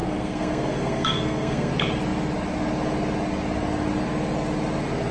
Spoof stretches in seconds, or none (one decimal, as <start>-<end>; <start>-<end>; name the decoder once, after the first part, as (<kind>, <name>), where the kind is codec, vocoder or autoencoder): 0.0-1.7 (codec, SNAC)